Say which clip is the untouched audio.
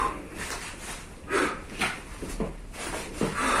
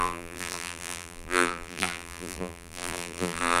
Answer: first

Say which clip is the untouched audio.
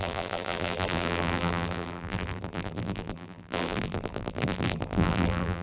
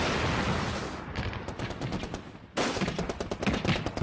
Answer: second